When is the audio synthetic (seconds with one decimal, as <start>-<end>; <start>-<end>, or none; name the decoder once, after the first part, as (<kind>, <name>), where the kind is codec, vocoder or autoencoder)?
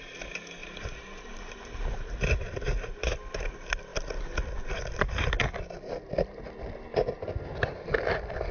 0.6-3.5 (vocoder, BigVGAN v2)